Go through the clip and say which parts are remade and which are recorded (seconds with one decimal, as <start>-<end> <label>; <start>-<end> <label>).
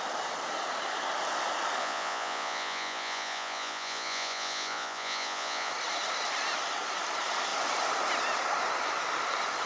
0.0-1.8 recorded; 1.8-5.7 remade; 5.7-9.7 recorded